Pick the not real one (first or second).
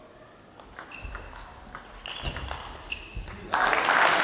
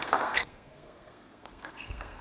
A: second